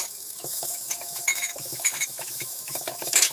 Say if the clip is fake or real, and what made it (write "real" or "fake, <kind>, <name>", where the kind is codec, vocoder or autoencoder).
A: fake, autoencoder, DAC-VAE